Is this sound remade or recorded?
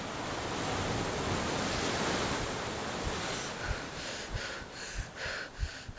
recorded